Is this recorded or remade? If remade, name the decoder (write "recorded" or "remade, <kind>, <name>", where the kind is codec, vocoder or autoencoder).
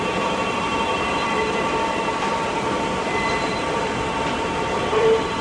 remade, vocoder, BigVGAN v2